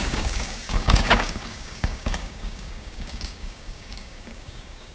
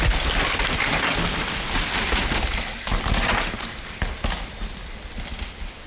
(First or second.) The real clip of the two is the second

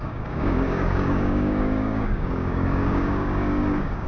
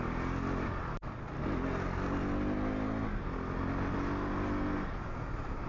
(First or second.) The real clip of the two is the second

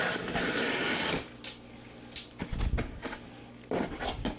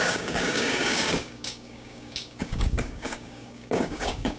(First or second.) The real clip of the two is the first